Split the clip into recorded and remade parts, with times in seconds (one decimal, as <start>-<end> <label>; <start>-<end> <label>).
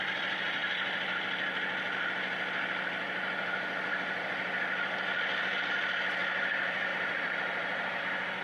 0.0-6.9 recorded; 6.9-8.0 remade; 8.0-8.4 recorded